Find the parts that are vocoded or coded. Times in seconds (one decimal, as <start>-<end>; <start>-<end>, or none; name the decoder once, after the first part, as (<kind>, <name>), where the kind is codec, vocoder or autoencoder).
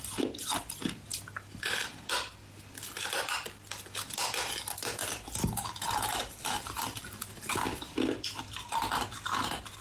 5.0-7.8 (vocoder, BigVGAN v2)